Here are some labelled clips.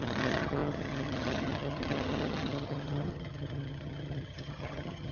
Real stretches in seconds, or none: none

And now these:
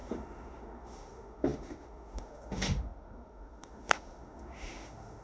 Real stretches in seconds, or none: none

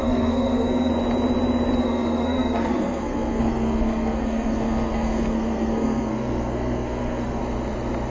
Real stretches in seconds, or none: 0.9-1.8; 7.4-8.1